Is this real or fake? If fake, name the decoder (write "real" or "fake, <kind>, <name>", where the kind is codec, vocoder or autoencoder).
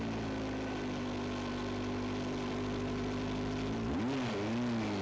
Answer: real